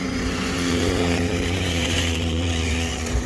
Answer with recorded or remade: remade